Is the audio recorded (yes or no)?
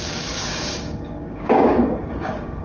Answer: no